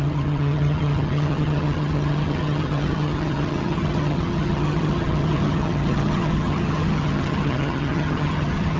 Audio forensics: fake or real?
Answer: fake